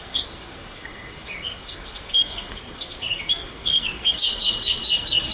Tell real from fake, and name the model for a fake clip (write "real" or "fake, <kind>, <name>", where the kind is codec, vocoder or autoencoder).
fake, codec, SNAC